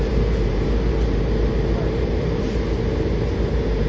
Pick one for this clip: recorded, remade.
remade